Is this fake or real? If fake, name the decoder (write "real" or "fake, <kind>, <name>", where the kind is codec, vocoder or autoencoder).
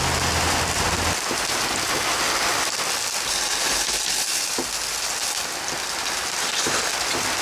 real